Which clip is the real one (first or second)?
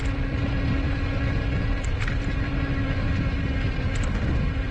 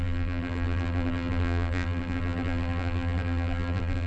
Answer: first